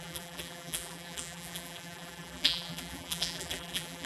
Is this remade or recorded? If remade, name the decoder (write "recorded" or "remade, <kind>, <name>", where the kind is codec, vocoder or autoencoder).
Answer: remade, vocoder, BigVGAN v2